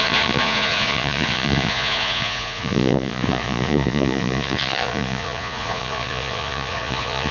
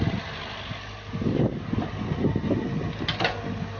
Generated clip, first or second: first